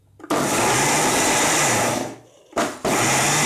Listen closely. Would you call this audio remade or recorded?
recorded